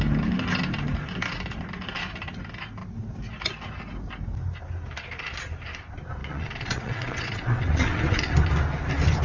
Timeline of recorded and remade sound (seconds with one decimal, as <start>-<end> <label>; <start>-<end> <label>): 0.0-6.2 recorded; 6.2-8.3 remade; 8.3-9.2 recorded